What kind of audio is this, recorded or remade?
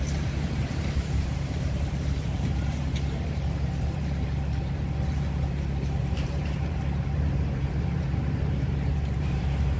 remade